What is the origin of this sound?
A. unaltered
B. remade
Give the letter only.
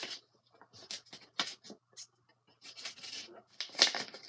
A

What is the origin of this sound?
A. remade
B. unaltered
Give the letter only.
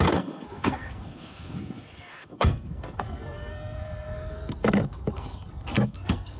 A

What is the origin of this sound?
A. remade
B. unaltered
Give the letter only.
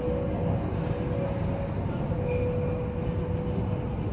B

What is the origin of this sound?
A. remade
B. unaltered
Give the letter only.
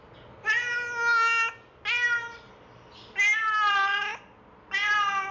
B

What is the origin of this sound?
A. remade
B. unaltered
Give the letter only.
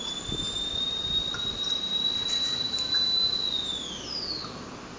B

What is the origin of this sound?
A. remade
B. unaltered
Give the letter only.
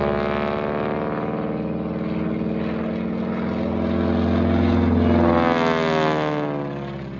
B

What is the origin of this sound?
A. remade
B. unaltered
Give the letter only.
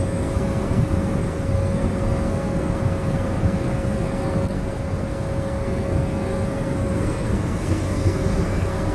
A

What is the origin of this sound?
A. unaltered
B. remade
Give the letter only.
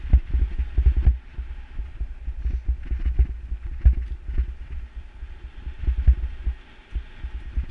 A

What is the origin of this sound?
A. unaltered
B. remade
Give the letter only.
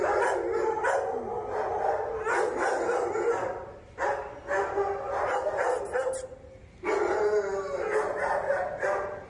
A